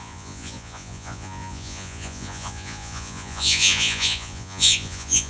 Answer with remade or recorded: remade